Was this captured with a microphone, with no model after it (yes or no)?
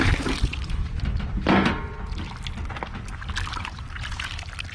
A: yes